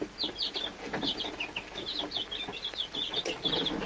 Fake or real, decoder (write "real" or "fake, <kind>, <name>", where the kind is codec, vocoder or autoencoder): real